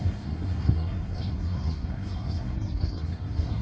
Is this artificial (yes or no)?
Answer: yes